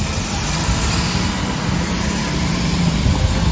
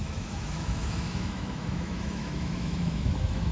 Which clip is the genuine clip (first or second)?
first